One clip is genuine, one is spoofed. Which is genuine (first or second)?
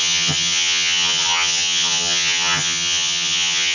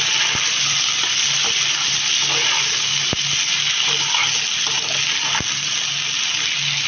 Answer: second